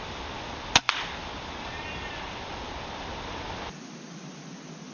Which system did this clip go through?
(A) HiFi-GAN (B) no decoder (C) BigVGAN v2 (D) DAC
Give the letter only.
B